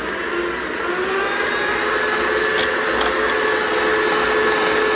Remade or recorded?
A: recorded